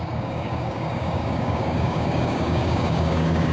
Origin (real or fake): fake